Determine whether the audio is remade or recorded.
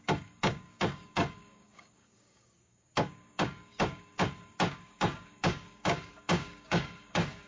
remade